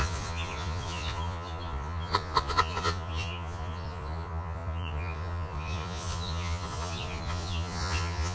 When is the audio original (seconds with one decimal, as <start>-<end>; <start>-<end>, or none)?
none